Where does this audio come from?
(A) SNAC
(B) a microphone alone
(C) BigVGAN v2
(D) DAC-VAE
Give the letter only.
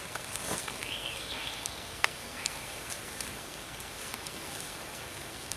A